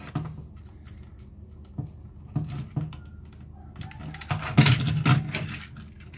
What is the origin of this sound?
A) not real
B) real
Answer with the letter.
B